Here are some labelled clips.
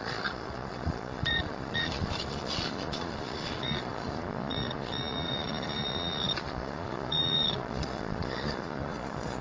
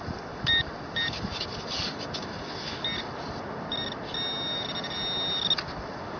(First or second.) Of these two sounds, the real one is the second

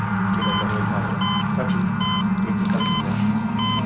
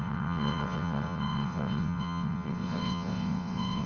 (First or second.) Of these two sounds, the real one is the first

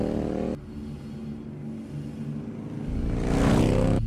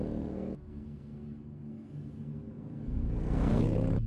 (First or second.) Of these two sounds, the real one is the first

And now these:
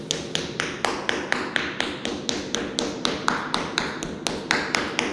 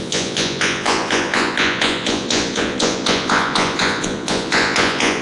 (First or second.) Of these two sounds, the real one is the first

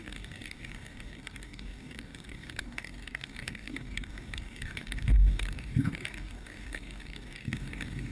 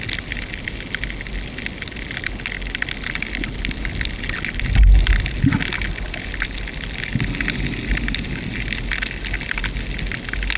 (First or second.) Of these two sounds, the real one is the second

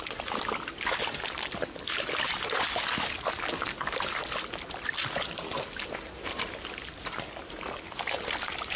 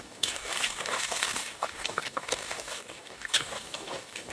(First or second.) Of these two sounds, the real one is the first